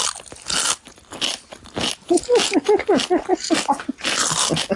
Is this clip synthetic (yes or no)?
no